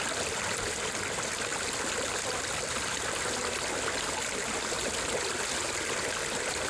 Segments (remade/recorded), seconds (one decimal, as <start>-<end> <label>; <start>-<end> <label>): 0.0-6.7 recorded